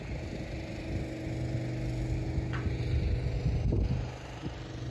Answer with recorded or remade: recorded